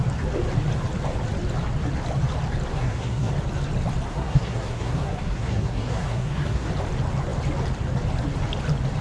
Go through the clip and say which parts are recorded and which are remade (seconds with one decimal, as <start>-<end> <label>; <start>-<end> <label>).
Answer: 0.0-2.7 recorded; 2.7-3.3 remade; 3.3-4.1 recorded; 4.1-6.7 remade; 6.7-9.0 recorded